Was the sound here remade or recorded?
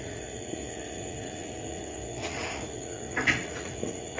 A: remade